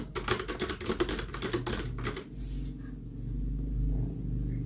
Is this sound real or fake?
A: real